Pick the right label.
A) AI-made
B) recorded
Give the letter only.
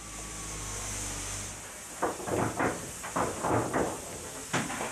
B